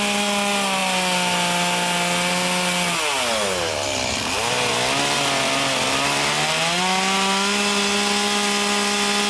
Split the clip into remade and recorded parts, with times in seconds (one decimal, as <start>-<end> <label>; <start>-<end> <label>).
0.0-9.3 recorded